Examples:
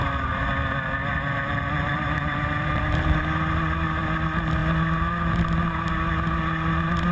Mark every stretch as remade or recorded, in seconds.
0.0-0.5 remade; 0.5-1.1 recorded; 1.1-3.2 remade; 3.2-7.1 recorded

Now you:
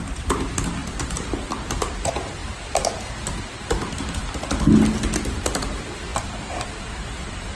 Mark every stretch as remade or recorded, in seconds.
0.0-0.8 recorded; 0.8-1.3 remade; 1.3-7.6 recorded

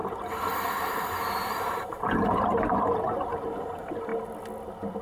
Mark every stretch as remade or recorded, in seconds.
0.0-1.0 recorded; 1.0-4.1 remade; 4.1-5.0 recorded

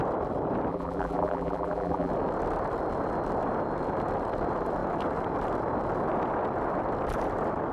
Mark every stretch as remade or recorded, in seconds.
0.0-0.7 recorded; 0.7-2.1 remade; 2.1-7.7 recorded

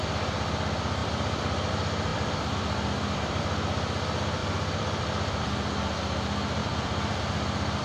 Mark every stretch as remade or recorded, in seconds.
0.0-1.0 recorded; 1.0-1.7 remade; 1.7-2.1 recorded; 2.1-3.4 remade; 3.4-4.4 recorded; 4.4-5.0 remade; 5.0-6.6 recorded; 6.6-7.8 remade

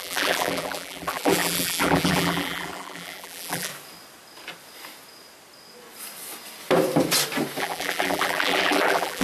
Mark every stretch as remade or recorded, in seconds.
0.0-3.7 remade; 3.7-7.6 recorded; 7.6-9.2 remade

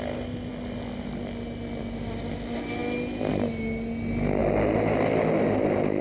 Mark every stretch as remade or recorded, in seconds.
0.0-6.0 recorded

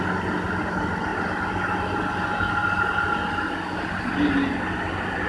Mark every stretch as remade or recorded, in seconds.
0.0-5.3 recorded